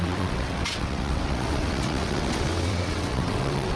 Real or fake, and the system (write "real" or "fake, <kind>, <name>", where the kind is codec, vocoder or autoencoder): fake, vocoder, WaveNeXt